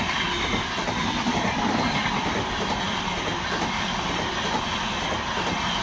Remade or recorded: recorded